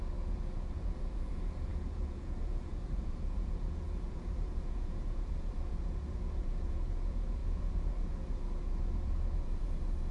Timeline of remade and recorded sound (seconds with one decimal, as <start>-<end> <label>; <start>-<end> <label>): 0.0-10.1 remade